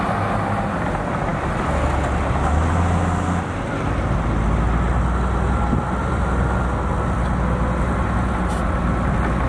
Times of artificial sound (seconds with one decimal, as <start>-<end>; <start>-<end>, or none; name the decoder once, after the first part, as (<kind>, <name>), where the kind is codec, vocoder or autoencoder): none